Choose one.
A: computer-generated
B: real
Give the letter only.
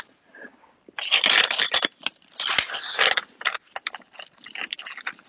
B